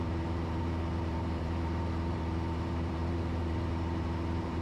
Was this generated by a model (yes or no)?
yes